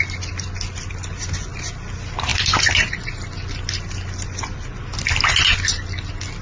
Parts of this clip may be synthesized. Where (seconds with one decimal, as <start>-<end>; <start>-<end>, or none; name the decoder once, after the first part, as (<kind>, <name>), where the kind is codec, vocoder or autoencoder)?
none